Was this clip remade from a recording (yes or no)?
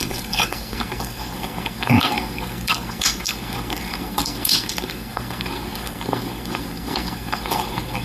yes